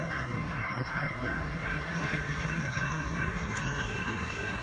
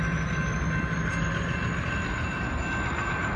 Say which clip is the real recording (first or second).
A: second